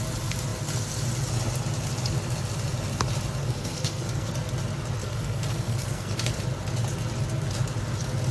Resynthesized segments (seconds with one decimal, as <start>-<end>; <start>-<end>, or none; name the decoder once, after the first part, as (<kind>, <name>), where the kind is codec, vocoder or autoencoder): 3.4-4.3 (codec, SNAC); 5.0-6.4